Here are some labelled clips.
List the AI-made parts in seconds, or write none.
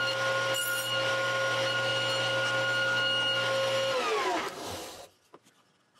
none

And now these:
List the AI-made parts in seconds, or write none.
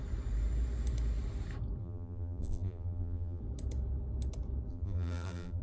1.8-3.4; 4.7-5.6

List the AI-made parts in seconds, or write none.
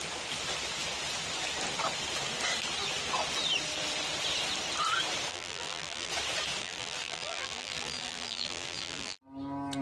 5.3-6.1; 6.6-9.2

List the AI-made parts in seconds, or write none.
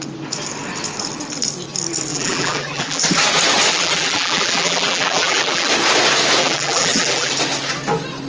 2.1-3.0; 3.7-5.7; 6.4-7.3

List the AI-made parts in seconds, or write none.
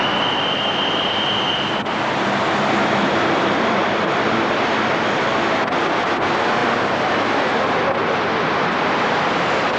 none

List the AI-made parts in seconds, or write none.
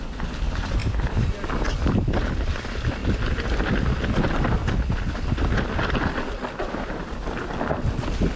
none